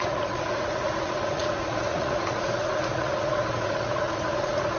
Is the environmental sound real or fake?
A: fake